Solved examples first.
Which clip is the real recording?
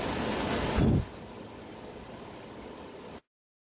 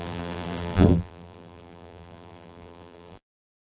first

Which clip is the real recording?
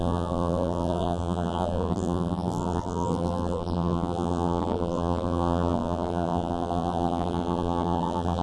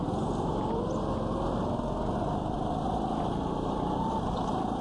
second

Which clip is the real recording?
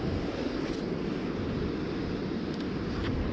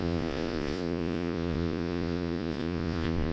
first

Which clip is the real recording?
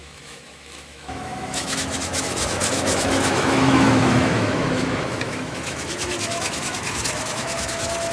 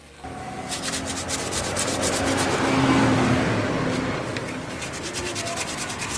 second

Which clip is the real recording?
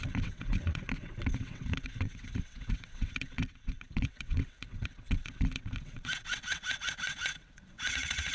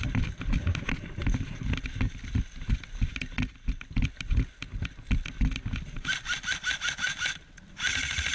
second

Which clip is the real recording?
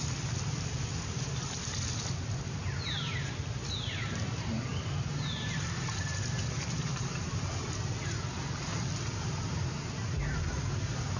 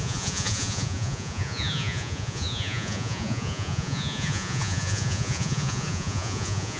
first